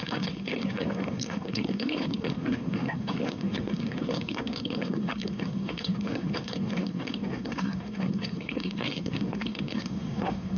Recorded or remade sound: remade